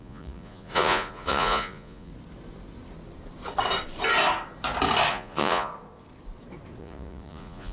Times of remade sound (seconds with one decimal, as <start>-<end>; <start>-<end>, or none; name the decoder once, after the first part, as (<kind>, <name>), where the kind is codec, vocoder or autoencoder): 0.0-2.1 (vocoder, Vocos); 5.1-5.7; 6.8-7.7